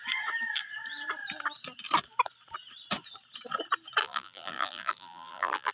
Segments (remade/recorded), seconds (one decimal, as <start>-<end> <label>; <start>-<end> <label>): 0.0-4.0 recorded; 4.0-5.7 remade